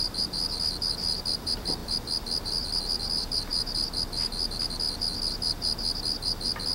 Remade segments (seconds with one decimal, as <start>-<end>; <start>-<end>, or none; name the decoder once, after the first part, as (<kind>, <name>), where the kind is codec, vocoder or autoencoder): none